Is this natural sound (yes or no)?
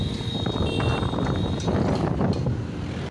yes